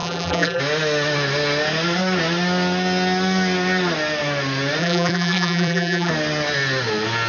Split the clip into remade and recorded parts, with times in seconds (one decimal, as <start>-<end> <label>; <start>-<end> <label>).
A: 0.0-0.6 remade; 0.6-4.8 recorded; 4.8-6.1 remade; 6.1-7.3 recorded